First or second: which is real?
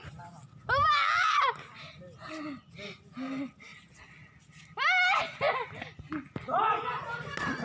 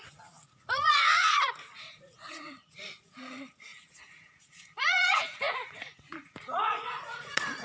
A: first